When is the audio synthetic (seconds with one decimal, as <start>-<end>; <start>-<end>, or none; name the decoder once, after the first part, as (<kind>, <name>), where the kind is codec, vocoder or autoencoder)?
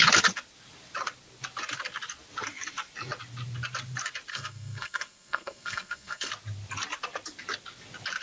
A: 4.3-6.3 (codec, SNAC)